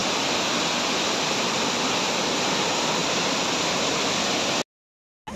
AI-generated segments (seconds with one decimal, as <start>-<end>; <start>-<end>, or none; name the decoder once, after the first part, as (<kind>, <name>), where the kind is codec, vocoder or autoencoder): none

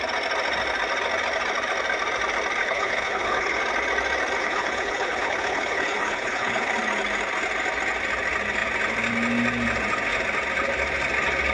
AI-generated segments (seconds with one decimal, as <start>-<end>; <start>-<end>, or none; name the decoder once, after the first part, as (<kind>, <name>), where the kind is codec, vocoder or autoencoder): 2.6-3.6 (codec, HILCodec); 4.4-6.7

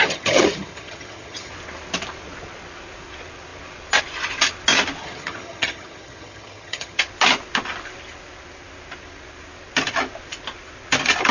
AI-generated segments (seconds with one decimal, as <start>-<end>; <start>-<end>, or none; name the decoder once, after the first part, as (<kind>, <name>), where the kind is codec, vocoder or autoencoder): 0.0-1.5 (vocoder, HiFi-GAN); 5.0-7.0